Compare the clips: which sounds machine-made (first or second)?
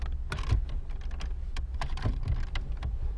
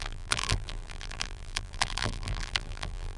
second